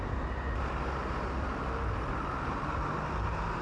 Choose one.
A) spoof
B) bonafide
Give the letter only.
B